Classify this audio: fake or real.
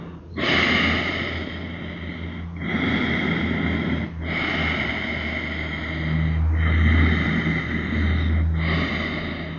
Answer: real